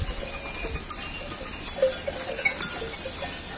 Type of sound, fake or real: real